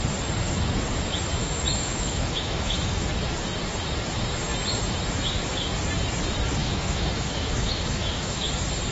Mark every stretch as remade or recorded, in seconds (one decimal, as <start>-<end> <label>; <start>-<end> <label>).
0.0-1.4 recorded; 1.4-3.1 remade; 3.1-6.6 recorded; 6.6-8.5 remade; 8.5-8.9 recorded

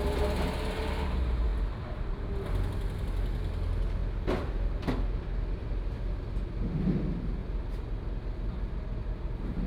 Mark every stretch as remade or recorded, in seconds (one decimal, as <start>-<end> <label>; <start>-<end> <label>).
0.0-9.7 recorded

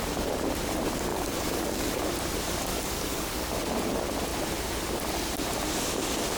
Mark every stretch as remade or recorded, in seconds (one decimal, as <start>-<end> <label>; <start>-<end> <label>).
0.0-1.1 recorded; 1.1-2.0 remade; 2.0-2.7 recorded; 2.7-3.5 remade; 3.5-6.4 recorded

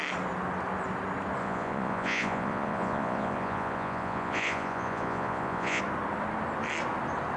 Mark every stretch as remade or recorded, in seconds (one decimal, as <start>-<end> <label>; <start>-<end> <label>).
0.0-1.4 recorded; 1.4-5.8 remade; 5.8-7.4 recorded